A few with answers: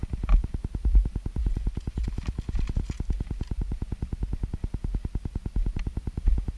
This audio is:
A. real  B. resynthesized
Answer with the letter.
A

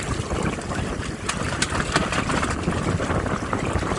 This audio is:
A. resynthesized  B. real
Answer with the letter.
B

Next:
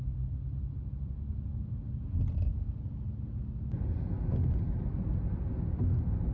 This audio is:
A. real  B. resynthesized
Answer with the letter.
A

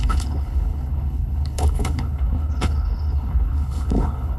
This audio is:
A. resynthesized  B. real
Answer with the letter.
A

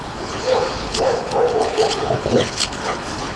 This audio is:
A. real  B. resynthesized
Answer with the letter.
B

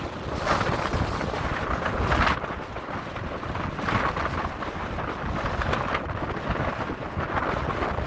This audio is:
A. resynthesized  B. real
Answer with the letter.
B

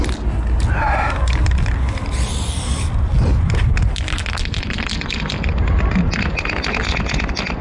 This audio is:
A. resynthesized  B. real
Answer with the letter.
B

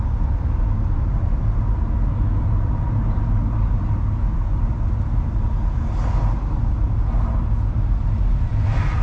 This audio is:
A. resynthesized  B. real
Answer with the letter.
B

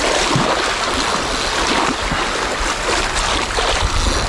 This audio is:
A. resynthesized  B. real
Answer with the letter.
B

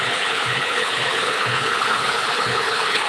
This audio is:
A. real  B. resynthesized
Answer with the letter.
B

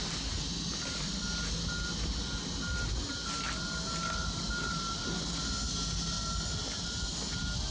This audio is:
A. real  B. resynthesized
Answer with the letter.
A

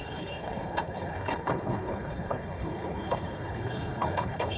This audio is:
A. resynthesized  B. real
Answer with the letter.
A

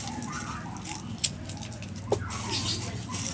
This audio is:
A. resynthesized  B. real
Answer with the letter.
B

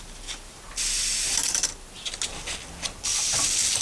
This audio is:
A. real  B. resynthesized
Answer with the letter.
A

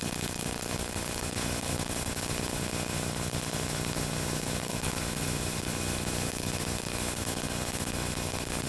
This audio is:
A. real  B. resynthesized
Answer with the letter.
B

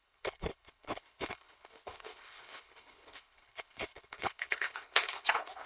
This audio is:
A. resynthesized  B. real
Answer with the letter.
A